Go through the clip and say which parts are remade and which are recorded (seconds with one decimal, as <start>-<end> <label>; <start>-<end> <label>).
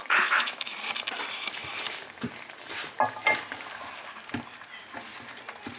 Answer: 0.0-0.8 remade; 0.8-5.8 recorded